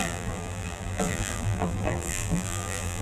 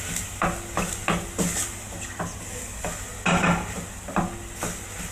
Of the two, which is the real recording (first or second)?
second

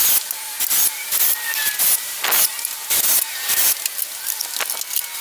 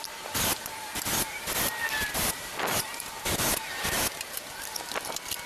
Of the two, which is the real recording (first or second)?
first